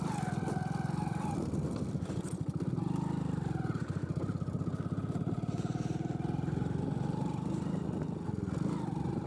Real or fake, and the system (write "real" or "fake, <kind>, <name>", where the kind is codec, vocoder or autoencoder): real